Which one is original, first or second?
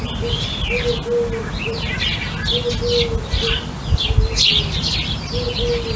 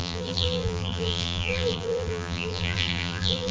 first